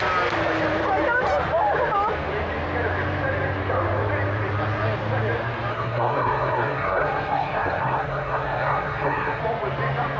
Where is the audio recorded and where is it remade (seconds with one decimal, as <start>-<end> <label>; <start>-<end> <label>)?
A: 0.0-5.7 recorded; 5.7-9.4 remade; 9.4-10.2 recorded